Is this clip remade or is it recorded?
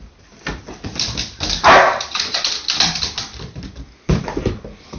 recorded